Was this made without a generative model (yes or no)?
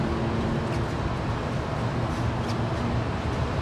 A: yes